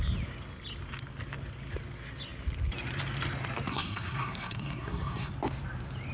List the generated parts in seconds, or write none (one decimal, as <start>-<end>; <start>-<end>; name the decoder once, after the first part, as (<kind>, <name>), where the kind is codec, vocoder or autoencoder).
3.7-5.3 (codec, SNAC)